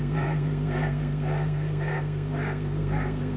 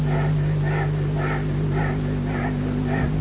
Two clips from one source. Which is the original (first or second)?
second